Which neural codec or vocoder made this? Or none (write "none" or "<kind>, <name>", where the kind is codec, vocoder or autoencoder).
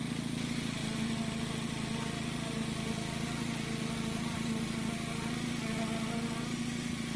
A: none